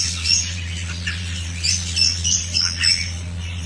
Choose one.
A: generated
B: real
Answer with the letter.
A